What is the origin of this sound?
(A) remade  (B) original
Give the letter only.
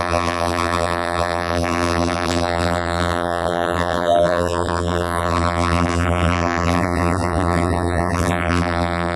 A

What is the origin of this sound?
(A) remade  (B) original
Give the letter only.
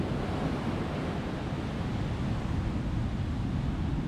B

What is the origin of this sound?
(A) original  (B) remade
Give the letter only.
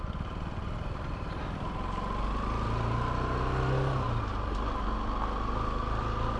A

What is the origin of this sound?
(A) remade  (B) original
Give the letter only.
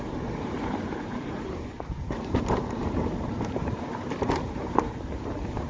A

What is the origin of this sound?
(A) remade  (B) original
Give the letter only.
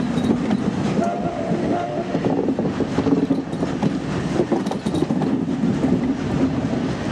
B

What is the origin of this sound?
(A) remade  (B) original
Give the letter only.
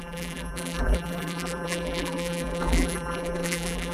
A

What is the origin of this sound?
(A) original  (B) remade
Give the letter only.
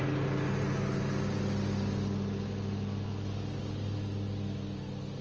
A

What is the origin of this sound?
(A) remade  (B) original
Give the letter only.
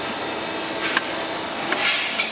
B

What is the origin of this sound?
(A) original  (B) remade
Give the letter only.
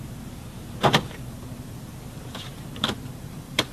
B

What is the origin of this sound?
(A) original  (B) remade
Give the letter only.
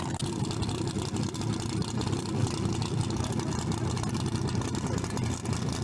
A